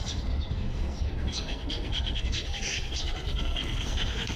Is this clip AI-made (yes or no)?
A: yes